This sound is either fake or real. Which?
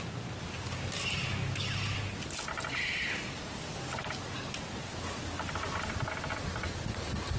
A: real